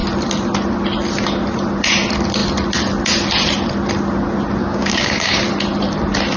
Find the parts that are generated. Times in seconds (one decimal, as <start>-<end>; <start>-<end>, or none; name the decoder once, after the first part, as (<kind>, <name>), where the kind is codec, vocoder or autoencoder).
4.6-5.4 (codec, DAC)